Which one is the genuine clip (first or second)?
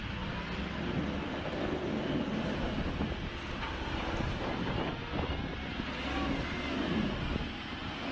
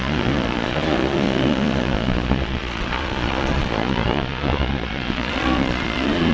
first